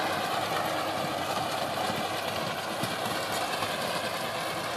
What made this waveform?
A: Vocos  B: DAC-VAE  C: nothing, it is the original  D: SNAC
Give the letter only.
C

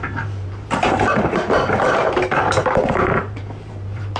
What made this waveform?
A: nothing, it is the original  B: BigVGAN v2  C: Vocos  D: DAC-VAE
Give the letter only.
B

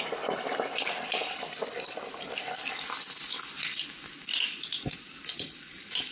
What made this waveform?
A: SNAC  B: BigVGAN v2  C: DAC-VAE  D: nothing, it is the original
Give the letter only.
D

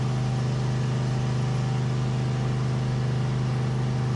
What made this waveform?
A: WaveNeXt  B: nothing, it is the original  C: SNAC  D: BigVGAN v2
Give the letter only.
B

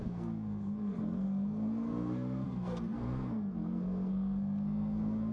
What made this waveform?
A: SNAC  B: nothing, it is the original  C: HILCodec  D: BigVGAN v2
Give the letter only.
A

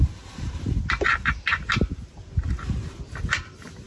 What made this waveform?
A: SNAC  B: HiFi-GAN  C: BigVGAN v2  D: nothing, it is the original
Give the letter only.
D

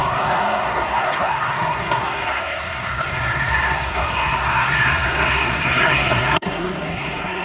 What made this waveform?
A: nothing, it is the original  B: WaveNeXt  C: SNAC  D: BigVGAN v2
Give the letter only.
C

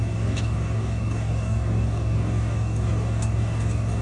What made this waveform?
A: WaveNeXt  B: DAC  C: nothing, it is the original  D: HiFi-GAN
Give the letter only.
B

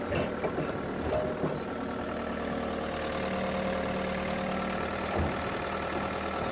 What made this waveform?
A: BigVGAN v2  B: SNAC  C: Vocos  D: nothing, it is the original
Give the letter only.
D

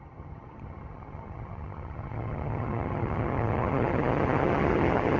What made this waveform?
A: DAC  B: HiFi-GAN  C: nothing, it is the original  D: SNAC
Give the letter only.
B